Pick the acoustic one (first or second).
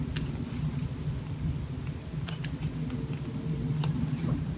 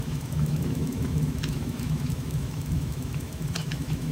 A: first